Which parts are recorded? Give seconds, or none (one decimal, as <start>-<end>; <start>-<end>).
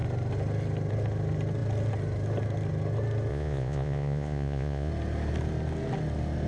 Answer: 0.0-3.3; 4.9-6.5